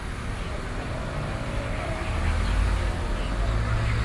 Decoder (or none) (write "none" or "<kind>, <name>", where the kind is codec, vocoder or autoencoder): none